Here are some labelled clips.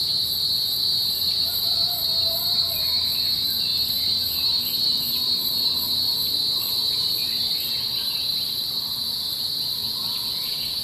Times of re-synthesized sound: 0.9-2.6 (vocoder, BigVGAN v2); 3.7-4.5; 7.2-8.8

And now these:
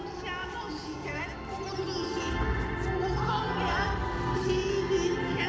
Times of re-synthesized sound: 0.4-1.2 (vocoder, Vocos)

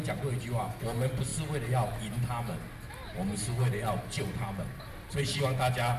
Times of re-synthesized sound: 3.6-5.4 (vocoder, BigVGAN v2)

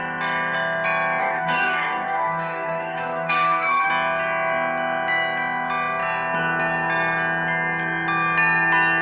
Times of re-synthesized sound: 1.2-3.9 (codec, DAC)

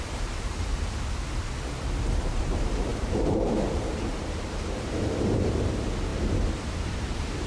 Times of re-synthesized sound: 0.0-0.7 (vocoder, BigVGAN v2); 2.4-7.5

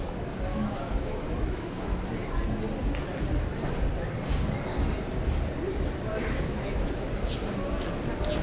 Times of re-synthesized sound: 0.5-2.1 (autoencoder, DAC-VAE); 6.1-7.1

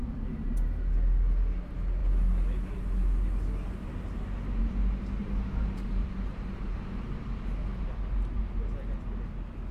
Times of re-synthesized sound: 5.2-6.7 (vocoder, BigVGAN v2); 7.7-8.4